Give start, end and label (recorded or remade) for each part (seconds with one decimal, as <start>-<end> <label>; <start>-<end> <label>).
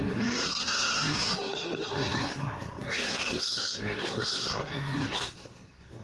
0.0-6.0 remade